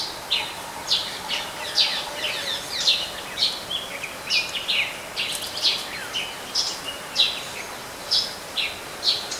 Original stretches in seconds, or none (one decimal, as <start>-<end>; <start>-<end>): 0.0-9.4